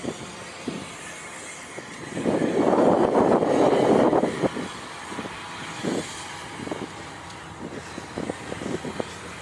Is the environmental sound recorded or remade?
remade